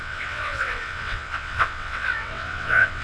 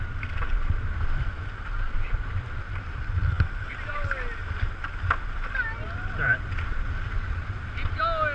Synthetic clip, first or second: first